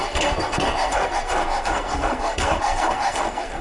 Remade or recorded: remade